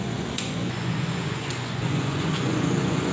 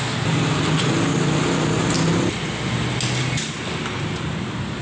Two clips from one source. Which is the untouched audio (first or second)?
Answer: second